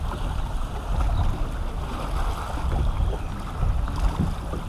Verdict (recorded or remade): recorded